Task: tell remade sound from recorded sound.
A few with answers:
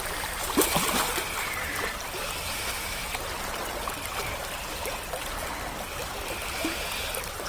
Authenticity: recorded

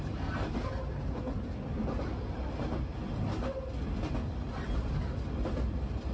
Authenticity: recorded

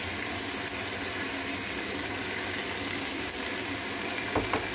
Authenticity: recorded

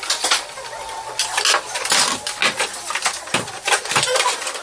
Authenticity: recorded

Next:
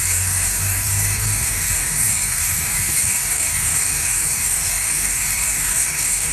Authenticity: remade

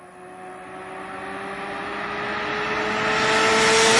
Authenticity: recorded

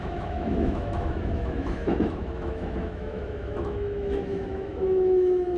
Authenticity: remade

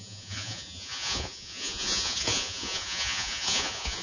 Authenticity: remade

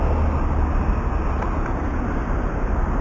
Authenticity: recorded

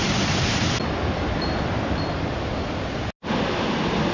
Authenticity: recorded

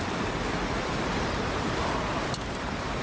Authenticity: remade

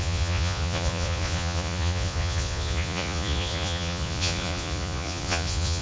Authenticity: remade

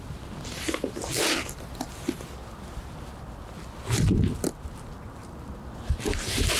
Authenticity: recorded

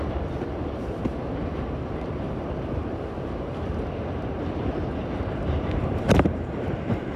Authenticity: remade